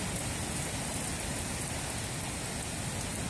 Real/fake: real